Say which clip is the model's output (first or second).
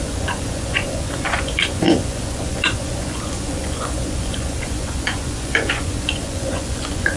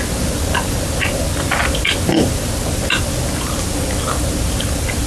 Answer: first